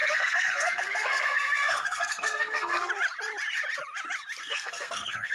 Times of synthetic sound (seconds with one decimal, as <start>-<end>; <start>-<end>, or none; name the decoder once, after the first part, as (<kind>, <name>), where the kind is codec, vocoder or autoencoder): 0.0-2.9 (codec, SNAC); 4.4-5.3